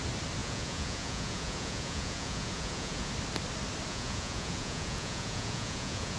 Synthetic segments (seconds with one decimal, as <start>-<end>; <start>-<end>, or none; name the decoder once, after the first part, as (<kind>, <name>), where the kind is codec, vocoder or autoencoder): 0.4-3.1 (vocoder, Vocos); 3.9-6.2